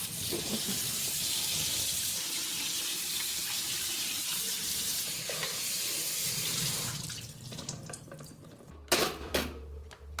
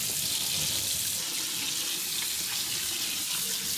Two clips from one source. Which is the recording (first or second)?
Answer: second